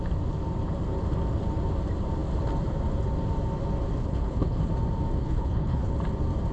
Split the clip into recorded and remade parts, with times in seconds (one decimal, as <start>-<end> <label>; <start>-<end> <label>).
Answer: 0.0-4.0 recorded; 4.0-4.7 remade; 4.7-5.2 recorded; 5.2-5.9 remade; 5.9-6.5 recorded